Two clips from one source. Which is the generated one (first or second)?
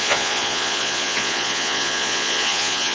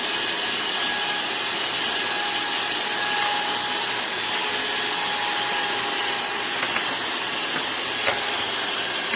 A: first